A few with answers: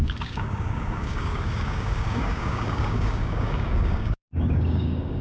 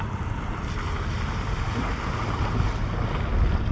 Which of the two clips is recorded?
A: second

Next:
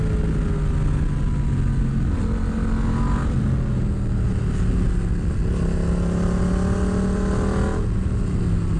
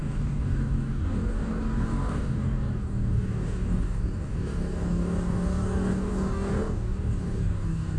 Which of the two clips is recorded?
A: first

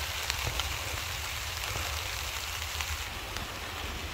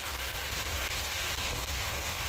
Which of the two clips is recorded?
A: first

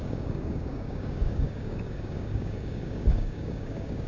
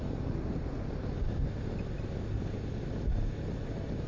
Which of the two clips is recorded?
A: second